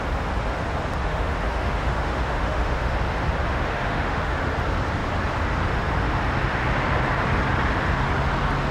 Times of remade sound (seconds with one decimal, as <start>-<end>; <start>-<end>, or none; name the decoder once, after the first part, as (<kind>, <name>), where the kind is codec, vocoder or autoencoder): 1.0-2.9 (autoencoder, DAC-VAE); 3.5-4.5